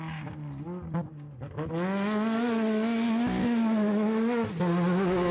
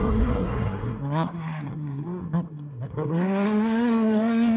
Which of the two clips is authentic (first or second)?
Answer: first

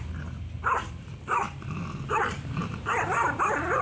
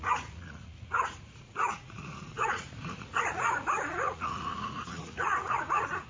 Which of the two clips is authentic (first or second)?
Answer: first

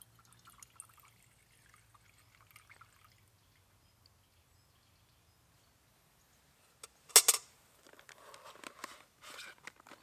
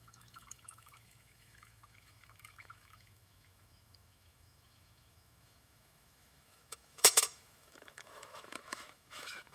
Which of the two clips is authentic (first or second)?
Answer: first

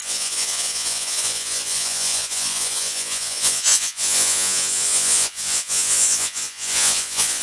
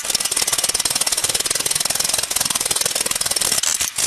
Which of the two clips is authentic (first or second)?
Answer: second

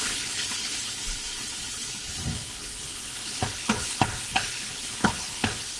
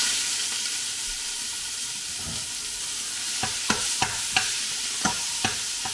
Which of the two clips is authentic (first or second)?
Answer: second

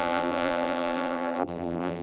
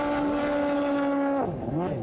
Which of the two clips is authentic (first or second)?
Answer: second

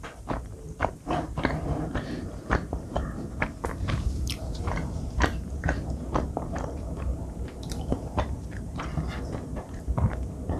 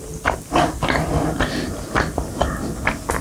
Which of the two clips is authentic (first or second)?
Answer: second